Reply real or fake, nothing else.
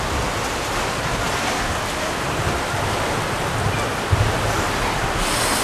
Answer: real